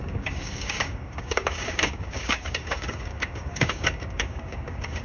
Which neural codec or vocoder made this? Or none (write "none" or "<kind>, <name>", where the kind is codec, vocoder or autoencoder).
codec, DAC